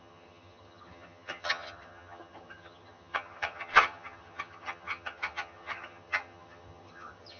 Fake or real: fake